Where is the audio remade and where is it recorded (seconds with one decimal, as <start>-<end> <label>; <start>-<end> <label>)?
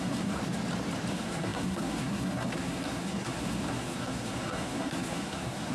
0.0-0.4 remade; 0.4-1.1 recorded; 1.1-5.7 remade